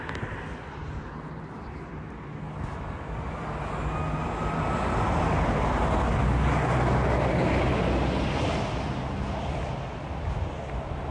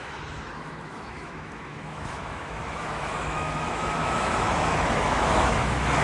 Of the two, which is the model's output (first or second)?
second